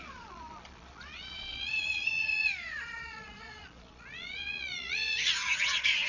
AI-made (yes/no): yes